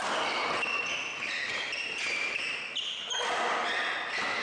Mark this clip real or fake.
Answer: real